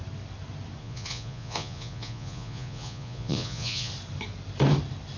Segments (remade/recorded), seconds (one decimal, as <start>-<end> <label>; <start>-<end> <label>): 0.0-0.8 recorded; 0.8-3.9 remade; 3.9-5.2 recorded